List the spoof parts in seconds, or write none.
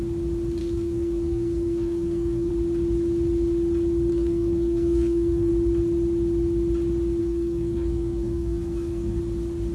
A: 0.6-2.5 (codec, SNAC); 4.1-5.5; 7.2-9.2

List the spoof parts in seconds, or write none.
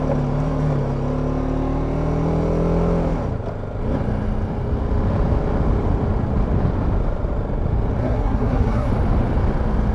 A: 8.0-8.9 (codec, SNAC)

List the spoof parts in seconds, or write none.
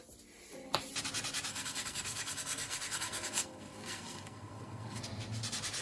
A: 1.5-5.0 (codec, SNAC)